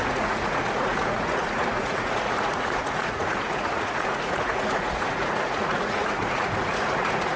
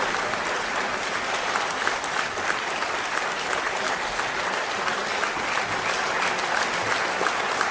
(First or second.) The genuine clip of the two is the second